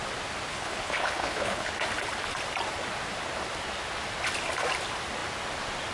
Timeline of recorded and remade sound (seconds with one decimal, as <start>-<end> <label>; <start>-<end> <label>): 0.0-0.5 recorded; 0.5-1.7 remade; 1.7-5.9 recorded